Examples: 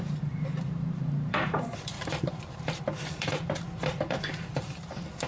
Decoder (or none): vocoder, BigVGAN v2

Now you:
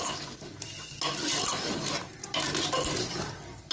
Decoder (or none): none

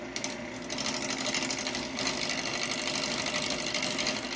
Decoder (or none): none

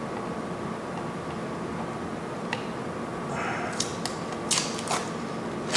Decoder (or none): none